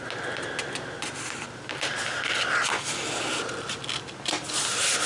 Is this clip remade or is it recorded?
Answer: recorded